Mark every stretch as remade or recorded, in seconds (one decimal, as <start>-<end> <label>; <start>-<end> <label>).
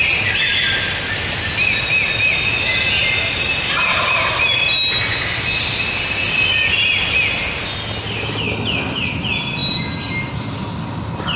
0.0-11.4 recorded